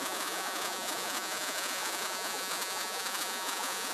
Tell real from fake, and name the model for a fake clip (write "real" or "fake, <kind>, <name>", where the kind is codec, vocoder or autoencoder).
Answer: fake, vocoder, Vocos